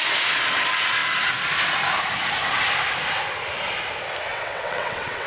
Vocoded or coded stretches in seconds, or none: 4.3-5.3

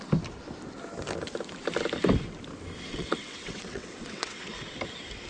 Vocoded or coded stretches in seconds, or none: 2.9-4.4

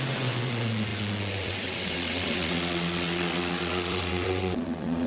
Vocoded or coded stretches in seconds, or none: 0.0-5.1